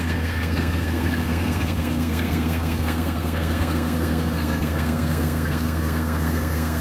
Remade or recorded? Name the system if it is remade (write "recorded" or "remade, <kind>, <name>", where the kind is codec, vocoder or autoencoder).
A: remade, codec, SNAC